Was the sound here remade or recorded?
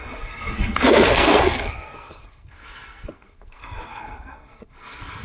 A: remade